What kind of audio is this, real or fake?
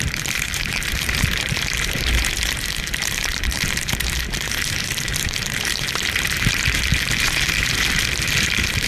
fake